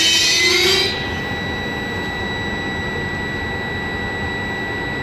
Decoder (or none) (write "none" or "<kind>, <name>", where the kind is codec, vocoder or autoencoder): none